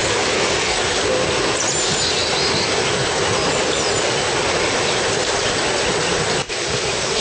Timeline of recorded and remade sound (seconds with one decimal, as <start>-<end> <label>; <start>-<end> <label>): 0.0-0.8 remade; 0.8-7.2 recorded